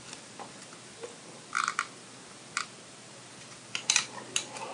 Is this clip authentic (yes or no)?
yes